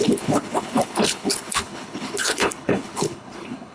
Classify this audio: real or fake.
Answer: fake